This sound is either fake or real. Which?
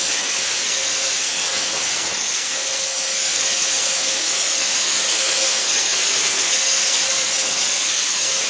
fake